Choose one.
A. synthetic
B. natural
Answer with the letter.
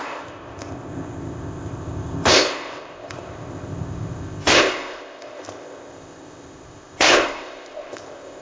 A